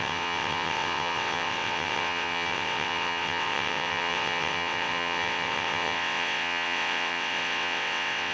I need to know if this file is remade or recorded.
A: remade